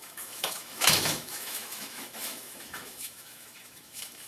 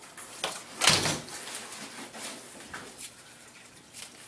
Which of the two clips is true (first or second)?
second